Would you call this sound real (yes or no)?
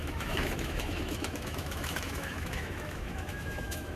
no